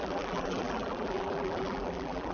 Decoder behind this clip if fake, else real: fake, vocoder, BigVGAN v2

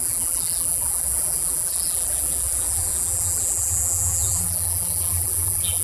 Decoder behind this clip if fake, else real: fake, vocoder, BigVGAN v2